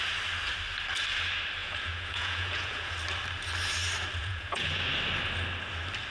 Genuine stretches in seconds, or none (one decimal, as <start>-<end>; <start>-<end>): 0.0-1.6; 2.9-4.2; 4.9-6.1